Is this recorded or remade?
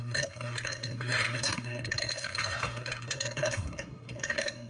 remade